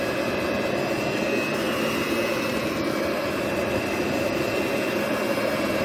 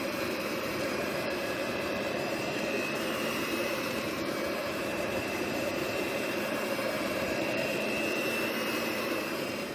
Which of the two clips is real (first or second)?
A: first